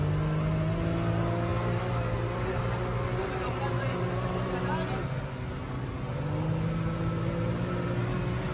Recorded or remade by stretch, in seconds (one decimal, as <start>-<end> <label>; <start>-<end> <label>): 0.0-8.5 recorded